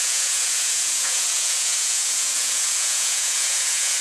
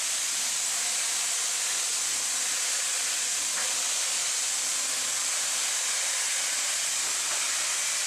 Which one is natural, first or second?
second